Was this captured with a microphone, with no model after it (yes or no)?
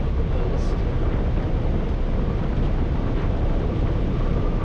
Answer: yes